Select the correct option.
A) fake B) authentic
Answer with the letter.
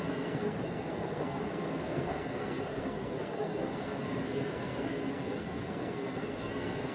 A